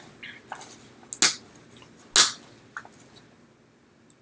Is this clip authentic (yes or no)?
yes